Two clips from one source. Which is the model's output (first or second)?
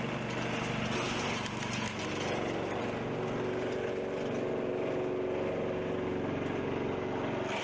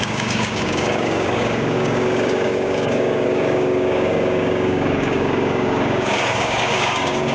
second